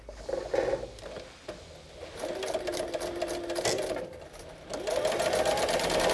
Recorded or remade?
recorded